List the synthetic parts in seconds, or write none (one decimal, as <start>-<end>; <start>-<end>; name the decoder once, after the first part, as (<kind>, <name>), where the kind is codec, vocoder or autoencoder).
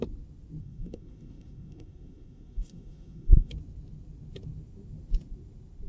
0.6-3.5 (codec, SNAC)